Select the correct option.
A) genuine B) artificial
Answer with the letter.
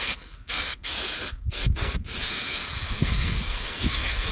B